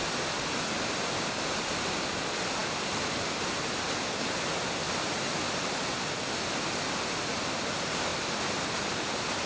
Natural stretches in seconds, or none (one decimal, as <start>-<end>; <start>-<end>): 0.0-9.5

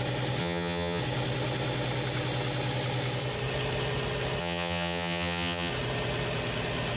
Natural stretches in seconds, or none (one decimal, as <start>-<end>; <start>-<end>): 0.0-0.4; 1.0-4.4; 5.7-7.0